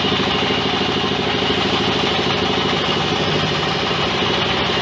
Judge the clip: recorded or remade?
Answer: recorded